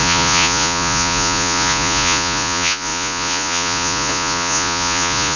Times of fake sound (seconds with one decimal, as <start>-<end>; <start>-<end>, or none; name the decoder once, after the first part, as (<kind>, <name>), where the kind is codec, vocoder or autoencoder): 0.0-5.4 (vocoder, Vocos)